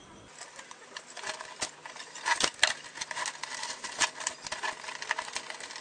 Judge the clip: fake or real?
real